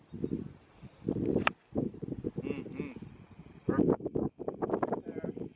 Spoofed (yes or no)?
no